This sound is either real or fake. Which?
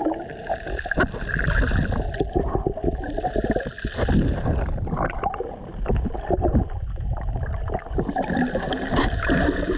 real